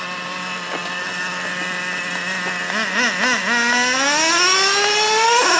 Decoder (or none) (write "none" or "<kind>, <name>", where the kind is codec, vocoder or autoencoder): none